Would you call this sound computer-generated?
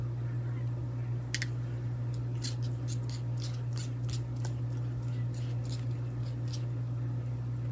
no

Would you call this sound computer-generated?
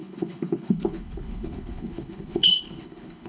yes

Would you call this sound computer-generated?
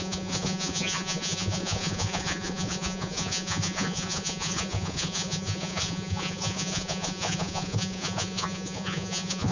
yes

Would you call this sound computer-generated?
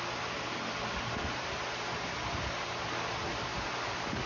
no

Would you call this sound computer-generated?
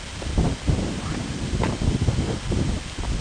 no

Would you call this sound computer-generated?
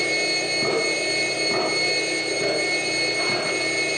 no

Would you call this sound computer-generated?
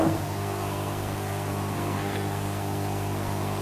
yes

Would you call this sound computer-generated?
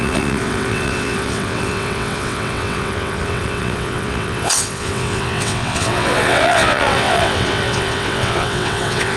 yes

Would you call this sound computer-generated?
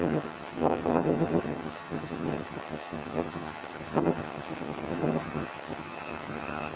yes